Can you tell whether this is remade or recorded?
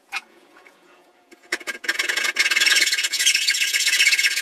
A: remade